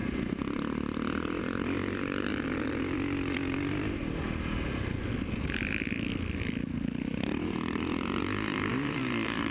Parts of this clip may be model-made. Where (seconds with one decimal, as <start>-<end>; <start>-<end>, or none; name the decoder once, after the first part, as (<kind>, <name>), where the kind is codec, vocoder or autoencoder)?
0.0-1.4 (vocoder, BigVGAN v2); 2.3-3.7; 8.7-9.5